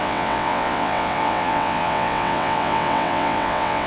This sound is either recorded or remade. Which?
remade